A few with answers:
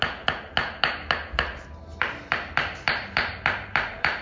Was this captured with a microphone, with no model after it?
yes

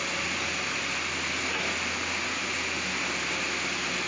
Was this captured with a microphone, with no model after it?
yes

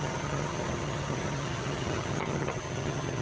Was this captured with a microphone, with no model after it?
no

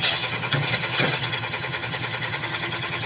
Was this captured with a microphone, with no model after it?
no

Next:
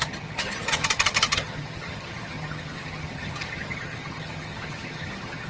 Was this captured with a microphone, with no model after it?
no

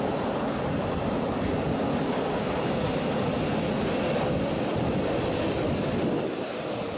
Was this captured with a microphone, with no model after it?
yes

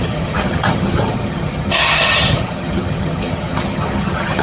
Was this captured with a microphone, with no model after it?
no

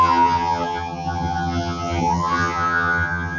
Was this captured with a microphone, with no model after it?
no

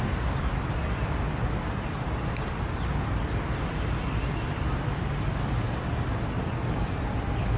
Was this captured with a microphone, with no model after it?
yes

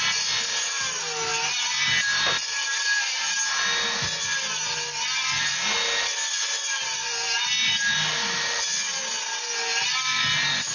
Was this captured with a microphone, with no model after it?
yes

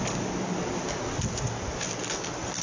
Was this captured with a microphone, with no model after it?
yes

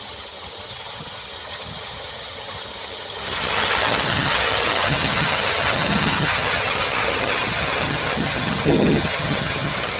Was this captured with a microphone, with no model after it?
no